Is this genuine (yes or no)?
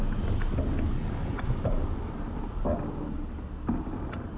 yes